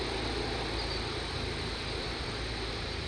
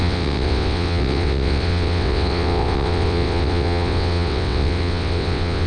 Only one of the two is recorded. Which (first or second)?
first